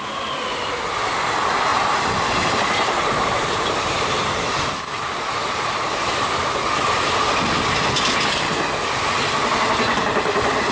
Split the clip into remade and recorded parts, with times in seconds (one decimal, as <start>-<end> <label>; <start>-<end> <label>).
0.0-1.7 recorded; 1.7-6.4 remade; 6.4-10.7 recorded